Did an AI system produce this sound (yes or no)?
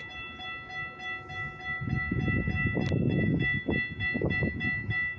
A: no